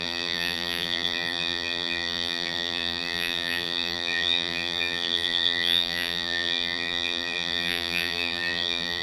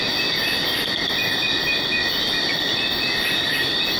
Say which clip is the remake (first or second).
first